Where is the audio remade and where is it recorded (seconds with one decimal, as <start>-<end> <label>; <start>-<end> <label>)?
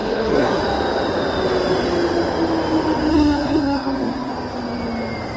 0.0-0.6 remade; 0.6-3.1 recorded; 3.1-4.3 remade; 4.3-5.4 recorded